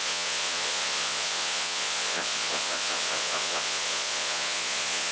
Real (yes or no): no